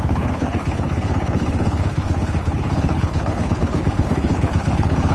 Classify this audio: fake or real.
fake